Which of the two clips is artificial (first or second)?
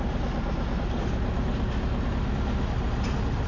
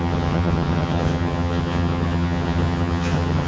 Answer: second